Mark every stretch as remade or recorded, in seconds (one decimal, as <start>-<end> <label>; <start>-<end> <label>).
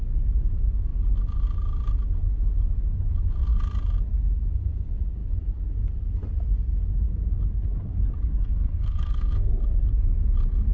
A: 0.0-8.4 recorded; 8.4-9.5 remade; 9.5-10.7 recorded